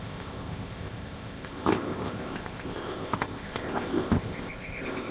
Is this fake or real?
fake